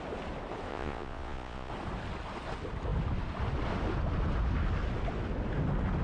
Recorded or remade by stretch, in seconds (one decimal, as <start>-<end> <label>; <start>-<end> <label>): 0.0-0.7 recorded; 0.7-1.7 remade; 1.7-6.0 recorded